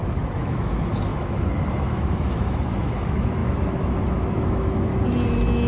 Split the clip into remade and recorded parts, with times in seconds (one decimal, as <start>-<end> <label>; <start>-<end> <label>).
0.0-4.9 remade; 4.9-5.7 recorded